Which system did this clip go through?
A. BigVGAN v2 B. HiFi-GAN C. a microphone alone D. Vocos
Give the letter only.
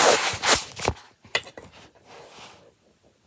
C